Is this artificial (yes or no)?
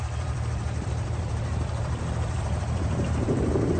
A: yes